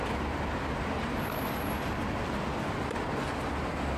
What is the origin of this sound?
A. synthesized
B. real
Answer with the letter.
B